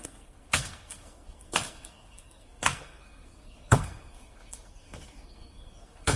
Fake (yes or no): yes